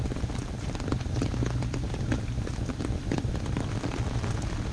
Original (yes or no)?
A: no